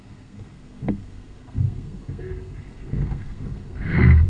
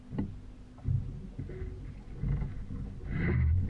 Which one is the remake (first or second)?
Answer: first